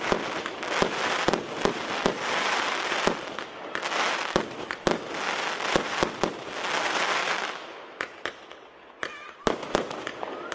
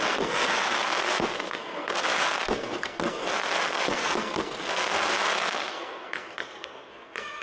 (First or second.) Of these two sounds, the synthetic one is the second